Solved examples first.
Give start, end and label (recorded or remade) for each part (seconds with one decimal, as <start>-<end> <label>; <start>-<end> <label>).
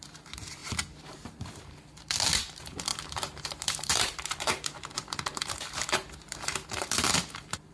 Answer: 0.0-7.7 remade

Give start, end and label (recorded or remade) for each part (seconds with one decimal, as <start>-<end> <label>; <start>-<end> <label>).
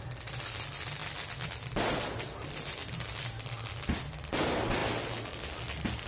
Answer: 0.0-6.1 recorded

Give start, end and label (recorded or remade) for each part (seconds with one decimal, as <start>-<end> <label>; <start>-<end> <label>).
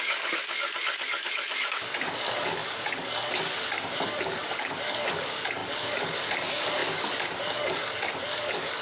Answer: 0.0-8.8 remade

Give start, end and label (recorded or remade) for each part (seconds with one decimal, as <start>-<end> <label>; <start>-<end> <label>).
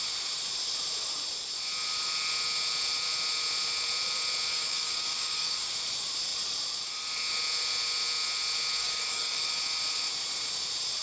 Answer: 0.0-4.5 recorded; 4.5-5.7 remade; 5.7-8.8 recorded; 8.8-9.5 remade; 9.5-11.0 recorded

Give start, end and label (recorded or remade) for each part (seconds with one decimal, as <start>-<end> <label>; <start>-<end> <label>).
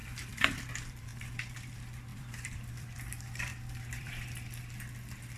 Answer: 0.0-1.1 remade; 1.1-1.7 recorded; 1.7-5.4 remade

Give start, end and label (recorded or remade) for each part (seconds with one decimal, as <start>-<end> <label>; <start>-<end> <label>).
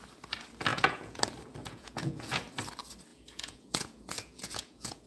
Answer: 0.0-0.7 recorded; 0.7-1.2 remade; 1.2-1.6 recorded; 1.6-2.4 remade; 2.4-3.1 recorded; 3.1-5.1 remade